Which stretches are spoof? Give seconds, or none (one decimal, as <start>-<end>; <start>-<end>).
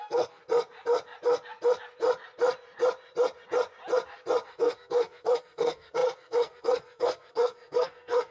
0.0-0.4; 4.5-8.3